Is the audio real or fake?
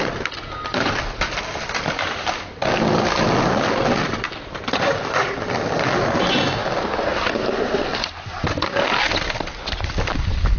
real